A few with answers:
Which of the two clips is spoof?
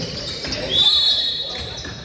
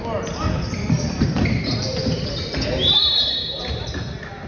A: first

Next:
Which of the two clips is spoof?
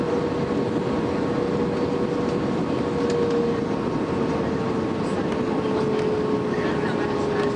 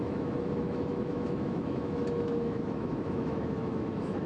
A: second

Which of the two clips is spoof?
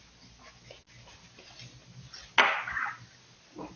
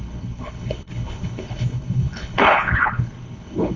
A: second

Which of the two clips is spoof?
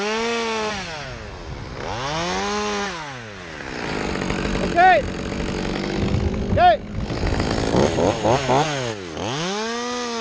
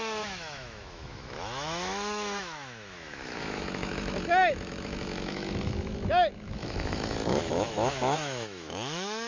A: second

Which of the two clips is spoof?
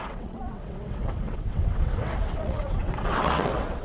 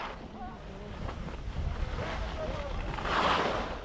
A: first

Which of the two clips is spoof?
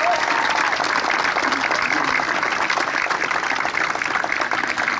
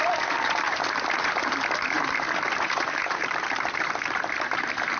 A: second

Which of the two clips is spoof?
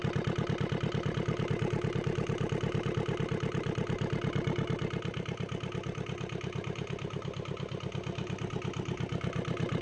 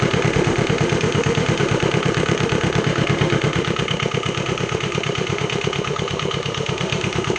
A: second